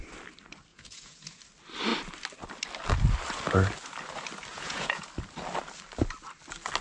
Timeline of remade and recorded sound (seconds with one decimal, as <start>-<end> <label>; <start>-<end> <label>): 0.0-0.7 recorded; 0.7-1.4 remade; 1.4-4.5 recorded; 4.5-5.1 remade; 5.1-6.8 recorded